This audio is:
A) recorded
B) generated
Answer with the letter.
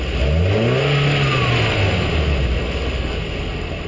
A